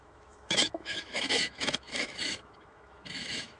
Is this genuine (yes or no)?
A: no